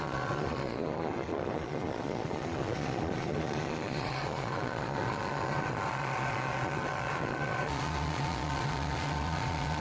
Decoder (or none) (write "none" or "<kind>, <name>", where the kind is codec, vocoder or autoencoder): vocoder, Vocos